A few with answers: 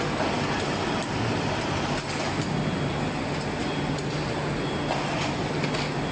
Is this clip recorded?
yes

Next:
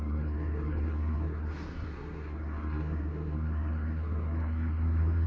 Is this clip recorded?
no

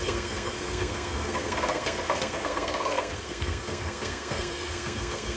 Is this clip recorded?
no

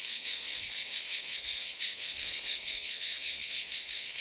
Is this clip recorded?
no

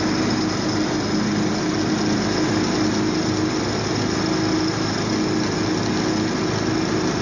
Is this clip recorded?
yes